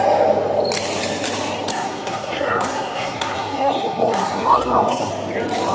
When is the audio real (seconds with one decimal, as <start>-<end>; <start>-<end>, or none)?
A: 0.0-1.7; 5.1-5.7